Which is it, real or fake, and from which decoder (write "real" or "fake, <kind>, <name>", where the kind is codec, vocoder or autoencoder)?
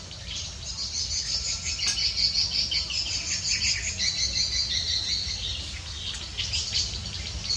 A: real